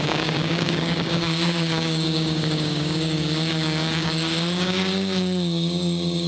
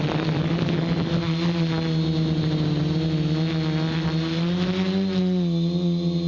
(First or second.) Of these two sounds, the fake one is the first